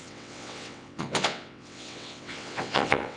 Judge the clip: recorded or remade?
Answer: remade